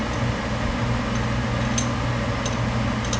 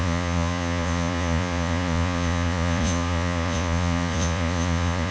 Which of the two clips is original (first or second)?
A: first